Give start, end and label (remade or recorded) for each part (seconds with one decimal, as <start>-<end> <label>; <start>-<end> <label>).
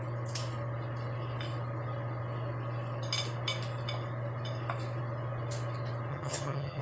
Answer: 0.0-6.1 recorded; 6.1-6.8 remade